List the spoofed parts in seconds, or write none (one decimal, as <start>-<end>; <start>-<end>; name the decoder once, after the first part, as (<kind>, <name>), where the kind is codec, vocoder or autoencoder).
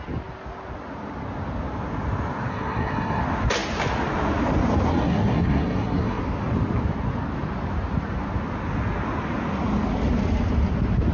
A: 2.5-3.2 (codec, SNAC); 4.9-6.2